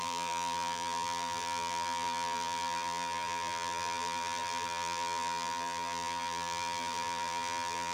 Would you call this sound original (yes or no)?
no